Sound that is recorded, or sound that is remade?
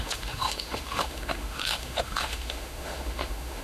remade